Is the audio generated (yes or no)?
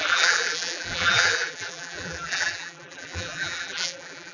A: yes